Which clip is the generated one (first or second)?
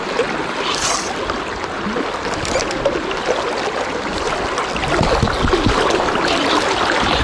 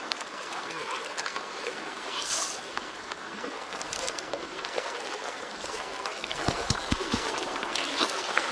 second